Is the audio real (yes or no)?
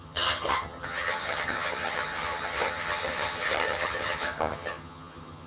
no